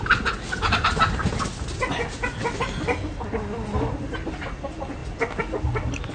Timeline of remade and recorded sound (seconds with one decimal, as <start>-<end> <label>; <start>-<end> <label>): 0.0-6.1 recorded